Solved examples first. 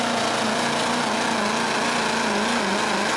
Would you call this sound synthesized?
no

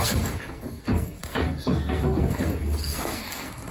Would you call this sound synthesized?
yes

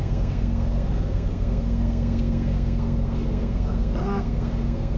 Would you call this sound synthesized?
yes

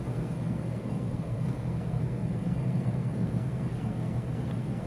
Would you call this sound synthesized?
yes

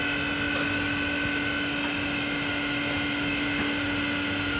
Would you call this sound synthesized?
no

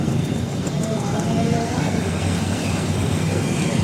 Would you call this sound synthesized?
yes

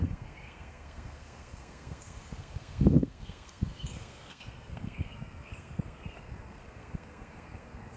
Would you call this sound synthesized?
yes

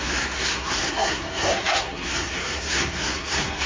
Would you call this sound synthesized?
yes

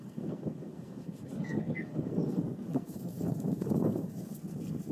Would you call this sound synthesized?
yes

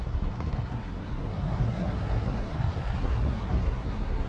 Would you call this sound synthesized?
yes